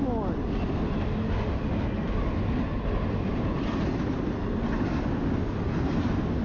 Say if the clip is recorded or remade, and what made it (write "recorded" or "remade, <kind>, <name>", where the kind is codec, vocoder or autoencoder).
recorded